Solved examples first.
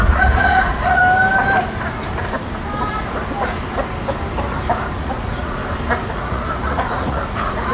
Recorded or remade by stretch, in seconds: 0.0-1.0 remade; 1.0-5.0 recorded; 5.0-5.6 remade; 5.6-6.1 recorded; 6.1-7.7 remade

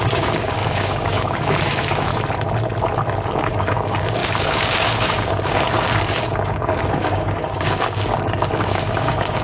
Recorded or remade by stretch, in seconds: 0.0-2.1 remade; 2.1-3.3 recorded; 3.3-9.4 remade

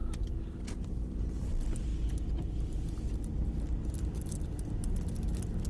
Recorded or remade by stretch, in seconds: 0.0-5.7 recorded

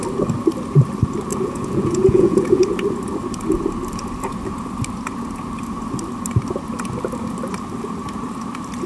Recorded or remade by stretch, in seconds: 0.0-1.3 recorded; 1.3-2.6 remade; 2.6-8.9 recorded

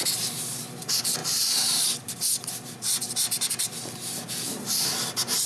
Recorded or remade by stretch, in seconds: 0.0-5.5 recorded